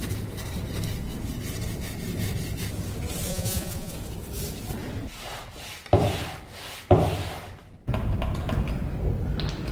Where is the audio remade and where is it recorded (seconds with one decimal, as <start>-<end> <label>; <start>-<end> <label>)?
0.0-3.3 recorded; 3.3-3.9 remade; 3.9-9.7 recorded